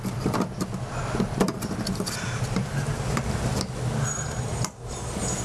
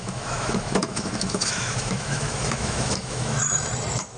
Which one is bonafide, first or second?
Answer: first